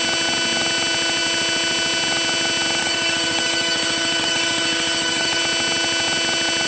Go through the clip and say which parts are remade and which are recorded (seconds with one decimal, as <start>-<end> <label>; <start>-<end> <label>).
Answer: 0.0-2.8 recorded; 2.8-5.4 remade; 5.4-6.7 recorded